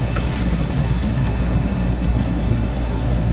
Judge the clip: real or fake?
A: fake